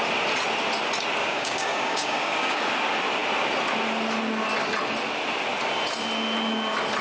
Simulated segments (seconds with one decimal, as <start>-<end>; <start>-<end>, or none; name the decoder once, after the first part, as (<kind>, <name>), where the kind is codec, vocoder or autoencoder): 1.2-2.6 (codec, DAC)